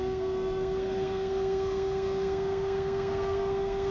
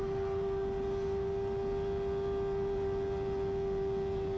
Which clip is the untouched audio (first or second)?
second